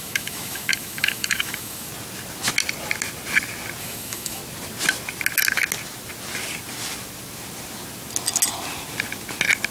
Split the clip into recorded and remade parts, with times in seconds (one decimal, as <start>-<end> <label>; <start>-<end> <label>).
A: 0.0-1.9 remade; 1.9-3.8 recorded; 3.8-4.4 remade; 4.4-9.7 recorded